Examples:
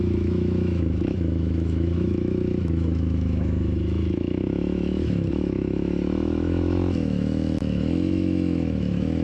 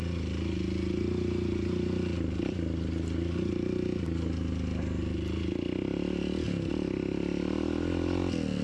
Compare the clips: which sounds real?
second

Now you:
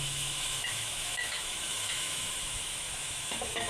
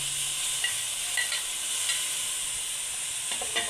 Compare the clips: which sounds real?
second